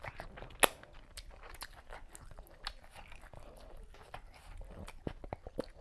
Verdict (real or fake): real